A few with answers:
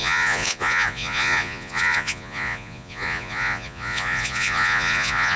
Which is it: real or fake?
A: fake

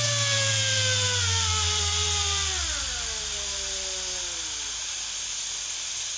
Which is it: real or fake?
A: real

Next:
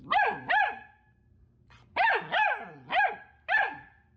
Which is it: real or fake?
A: real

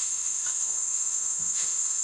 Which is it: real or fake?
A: fake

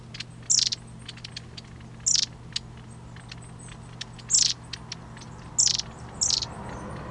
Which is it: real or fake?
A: real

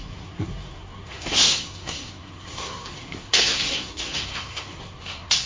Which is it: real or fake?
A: fake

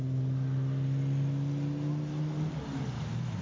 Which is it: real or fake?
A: real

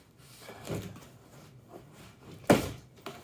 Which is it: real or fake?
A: real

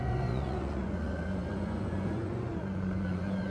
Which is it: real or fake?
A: fake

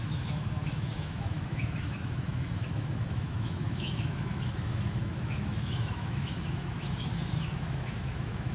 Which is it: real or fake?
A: fake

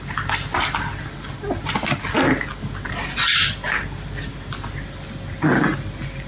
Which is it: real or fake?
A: real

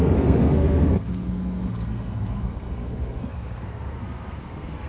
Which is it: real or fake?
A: fake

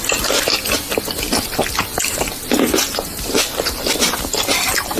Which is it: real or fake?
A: real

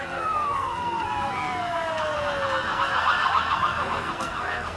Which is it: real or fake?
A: fake